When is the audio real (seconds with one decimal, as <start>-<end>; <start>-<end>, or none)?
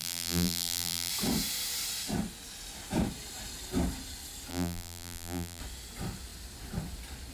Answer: 1.1-4.5; 5.6-7.3